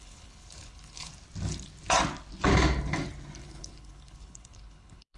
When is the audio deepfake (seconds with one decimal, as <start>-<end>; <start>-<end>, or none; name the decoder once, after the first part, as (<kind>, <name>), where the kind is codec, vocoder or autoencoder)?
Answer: 0.0-1.1 (codec, HILCodec); 3.4-5.2